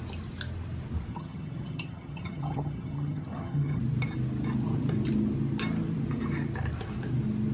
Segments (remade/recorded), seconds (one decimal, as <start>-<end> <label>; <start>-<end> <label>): 0.0-1.1 recorded; 1.1-3.8 remade; 3.8-7.5 recorded